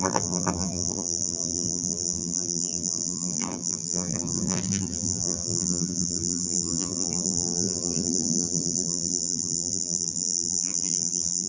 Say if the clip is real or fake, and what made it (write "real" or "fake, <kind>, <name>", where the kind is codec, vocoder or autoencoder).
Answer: fake, vocoder, BigVGAN v2